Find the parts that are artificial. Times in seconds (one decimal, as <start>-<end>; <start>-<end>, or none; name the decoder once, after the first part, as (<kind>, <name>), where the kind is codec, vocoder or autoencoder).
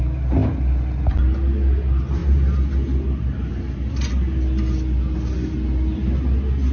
none